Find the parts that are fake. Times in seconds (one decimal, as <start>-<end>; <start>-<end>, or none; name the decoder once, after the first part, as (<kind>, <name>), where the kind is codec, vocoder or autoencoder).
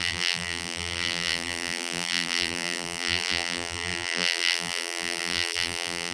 0.0-6.1 (vocoder, BigVGAN v2)